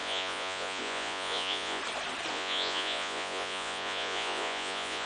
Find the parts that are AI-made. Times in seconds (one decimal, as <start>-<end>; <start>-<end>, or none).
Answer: 0.0-1.8; 2.3-5.1